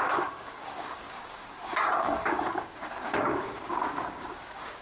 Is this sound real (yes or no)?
no